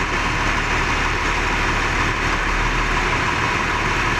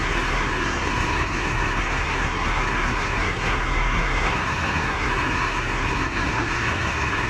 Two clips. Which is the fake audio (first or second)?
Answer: second